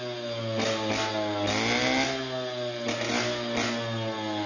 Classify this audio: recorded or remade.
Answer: recorded